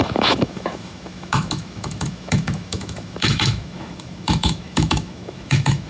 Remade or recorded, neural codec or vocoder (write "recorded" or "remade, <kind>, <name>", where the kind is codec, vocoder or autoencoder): remade, autoencoder, DAC-VAE